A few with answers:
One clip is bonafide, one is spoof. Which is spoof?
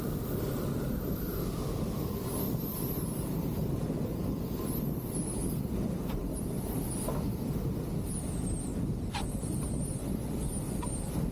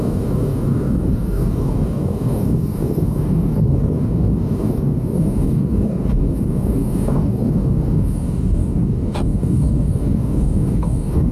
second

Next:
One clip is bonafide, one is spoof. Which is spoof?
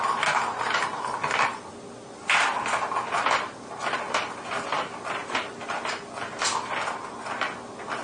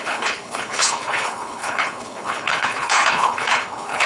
second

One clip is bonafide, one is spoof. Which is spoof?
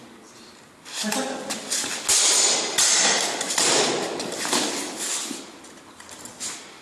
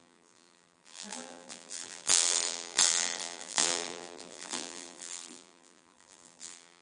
second